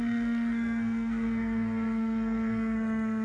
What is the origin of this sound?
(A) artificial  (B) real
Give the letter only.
A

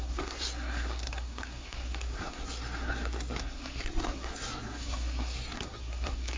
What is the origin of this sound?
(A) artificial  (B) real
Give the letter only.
A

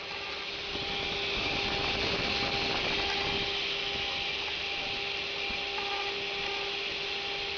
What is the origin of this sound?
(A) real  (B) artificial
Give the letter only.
A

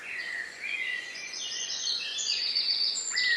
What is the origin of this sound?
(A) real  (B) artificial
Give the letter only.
B